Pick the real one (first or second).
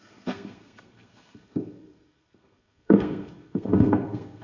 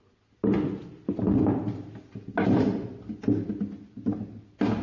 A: second